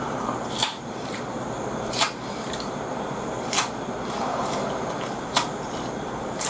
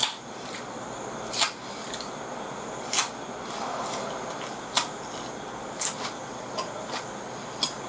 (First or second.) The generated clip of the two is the first